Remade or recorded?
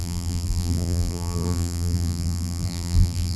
remade